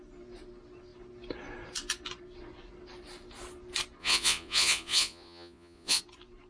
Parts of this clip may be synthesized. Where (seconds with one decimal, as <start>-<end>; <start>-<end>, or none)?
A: 4.0-6.0